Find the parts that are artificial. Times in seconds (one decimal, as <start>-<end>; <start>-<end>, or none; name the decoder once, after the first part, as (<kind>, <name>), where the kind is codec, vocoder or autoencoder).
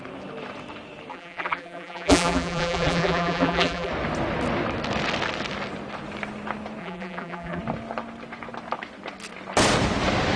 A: 1.1-3.9 (vocoder, BigVGAN v2); 6.8-7.6